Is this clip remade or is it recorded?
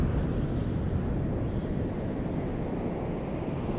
recorded